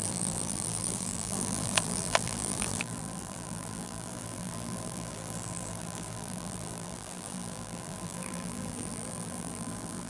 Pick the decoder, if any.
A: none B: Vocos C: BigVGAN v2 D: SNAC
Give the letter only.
C